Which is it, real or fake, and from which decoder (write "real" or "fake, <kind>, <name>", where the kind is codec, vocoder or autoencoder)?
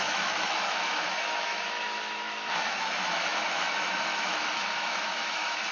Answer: fake, autoencoder, DAC-VAE